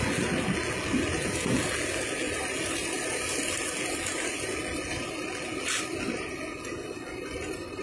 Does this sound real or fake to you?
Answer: real